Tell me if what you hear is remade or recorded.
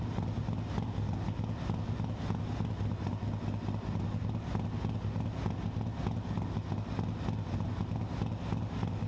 recorded